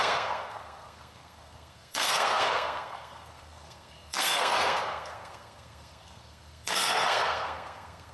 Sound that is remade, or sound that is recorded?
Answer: remade